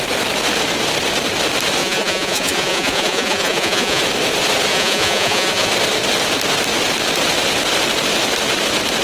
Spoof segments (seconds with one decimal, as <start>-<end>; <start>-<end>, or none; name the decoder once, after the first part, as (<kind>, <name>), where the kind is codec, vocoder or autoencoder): 1.8-4.0 (vocoder, Vocos); 4.7-5.7